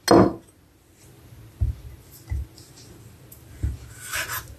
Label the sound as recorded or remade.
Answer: recorded